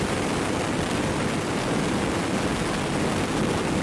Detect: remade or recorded recorded